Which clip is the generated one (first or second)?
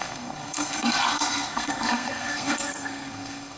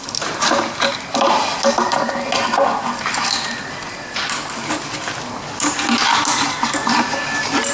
first